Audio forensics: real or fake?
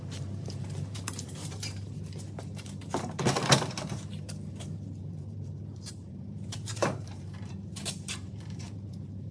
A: fake